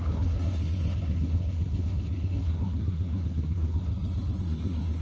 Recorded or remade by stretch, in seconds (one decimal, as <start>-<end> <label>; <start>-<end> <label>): 0.0-3.9 remade; 3.9-4.4 recorded; 4.4-5.0 remade